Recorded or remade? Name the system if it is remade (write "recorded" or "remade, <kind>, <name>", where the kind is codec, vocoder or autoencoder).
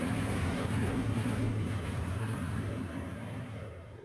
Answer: remade, codec, SNAC